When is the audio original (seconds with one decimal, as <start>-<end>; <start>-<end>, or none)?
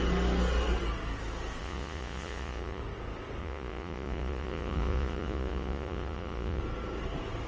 0.0-1.6; 2.8-3.4; 6.6-7.5